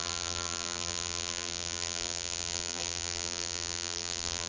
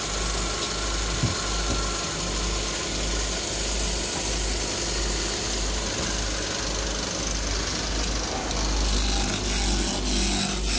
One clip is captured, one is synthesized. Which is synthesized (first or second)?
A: first